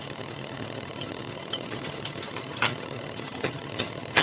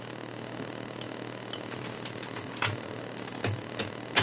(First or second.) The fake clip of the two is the first